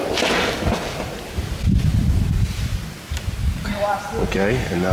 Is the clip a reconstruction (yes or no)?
no